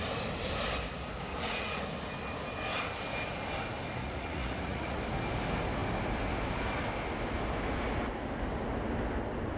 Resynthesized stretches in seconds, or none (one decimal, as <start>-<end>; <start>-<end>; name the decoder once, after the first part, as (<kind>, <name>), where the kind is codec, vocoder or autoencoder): 1.3-1.8 (vocoder, Vocos); 4.0-5.0